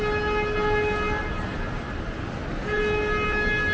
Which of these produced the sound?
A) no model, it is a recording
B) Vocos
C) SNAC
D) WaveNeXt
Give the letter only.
A